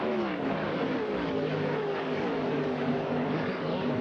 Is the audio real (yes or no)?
no